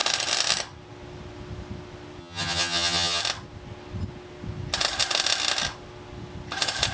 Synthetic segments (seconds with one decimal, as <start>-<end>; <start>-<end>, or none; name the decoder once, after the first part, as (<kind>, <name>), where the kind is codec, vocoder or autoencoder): 2.2-3.2 (vocoder, HiFi-GAN)